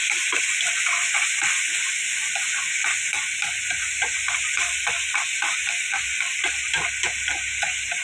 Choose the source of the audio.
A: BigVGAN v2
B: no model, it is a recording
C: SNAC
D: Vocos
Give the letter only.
B